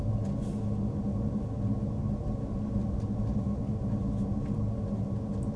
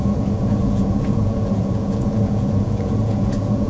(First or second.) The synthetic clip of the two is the second